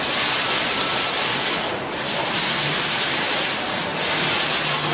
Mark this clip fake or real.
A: real